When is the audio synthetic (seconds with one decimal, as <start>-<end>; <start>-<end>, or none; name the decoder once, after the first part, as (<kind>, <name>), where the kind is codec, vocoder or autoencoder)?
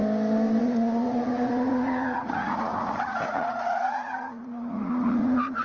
0.6-5.6 (vocoder, Vocos)